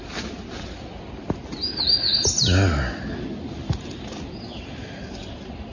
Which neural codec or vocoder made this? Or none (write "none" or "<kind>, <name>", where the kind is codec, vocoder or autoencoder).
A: none